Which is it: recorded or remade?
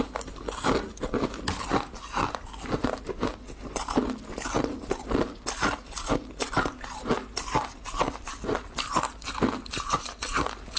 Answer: recorded